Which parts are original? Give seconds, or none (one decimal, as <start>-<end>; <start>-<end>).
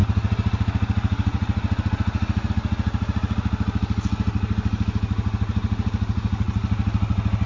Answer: 0.0-7.5